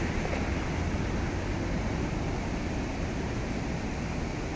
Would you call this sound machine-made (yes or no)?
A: no